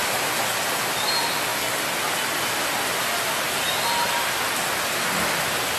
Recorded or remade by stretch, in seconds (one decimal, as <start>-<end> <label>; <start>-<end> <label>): 0.0-5.8 recorded